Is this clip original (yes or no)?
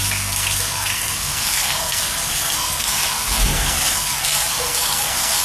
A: no